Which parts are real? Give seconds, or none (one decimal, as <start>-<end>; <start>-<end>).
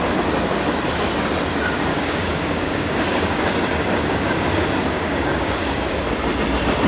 0.0-1.9; 6.0-6.9